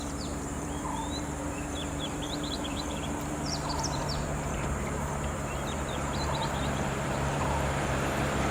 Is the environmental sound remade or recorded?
remade